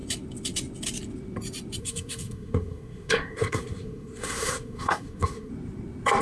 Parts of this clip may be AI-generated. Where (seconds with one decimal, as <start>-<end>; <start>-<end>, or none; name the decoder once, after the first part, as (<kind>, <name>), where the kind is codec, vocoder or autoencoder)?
1.8-5.5 (codec, SNAC)